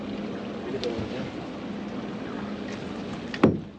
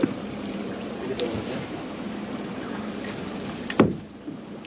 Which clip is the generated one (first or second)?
second